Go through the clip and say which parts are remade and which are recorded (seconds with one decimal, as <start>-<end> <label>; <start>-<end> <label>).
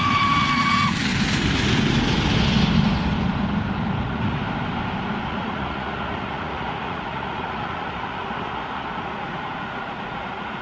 0.0-1.1 remade; 1.1-4.0 recorded; 4.0-4.4 remade; 4.4-5.2 recorded; 5.2-10.6 remade